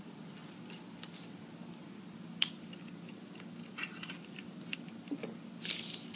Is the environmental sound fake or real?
real